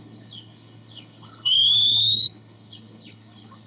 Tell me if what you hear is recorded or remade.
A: remade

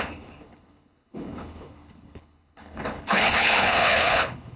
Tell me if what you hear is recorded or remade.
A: remade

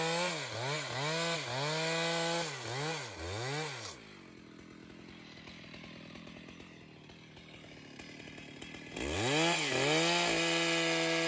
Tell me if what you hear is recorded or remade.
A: recorded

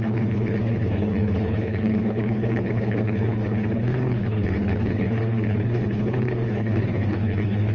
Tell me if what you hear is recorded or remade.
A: remade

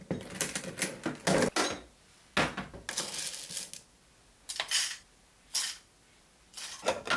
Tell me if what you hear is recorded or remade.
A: recorded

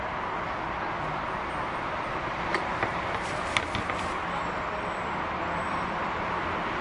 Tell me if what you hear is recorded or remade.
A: recorded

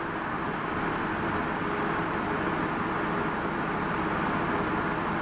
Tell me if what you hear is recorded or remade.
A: recorded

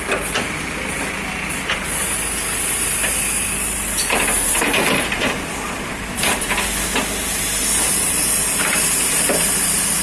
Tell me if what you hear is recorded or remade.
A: recorded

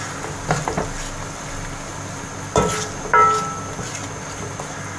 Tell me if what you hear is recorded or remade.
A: recorded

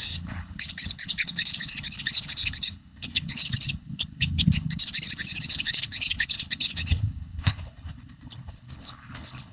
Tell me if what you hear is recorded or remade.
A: remade